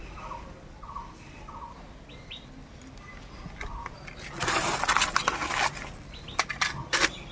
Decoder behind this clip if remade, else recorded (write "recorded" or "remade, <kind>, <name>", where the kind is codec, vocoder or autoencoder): recorded